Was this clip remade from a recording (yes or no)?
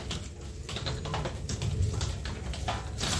no